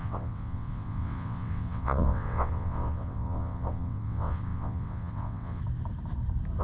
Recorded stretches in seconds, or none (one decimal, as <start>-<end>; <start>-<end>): 5.6-6.6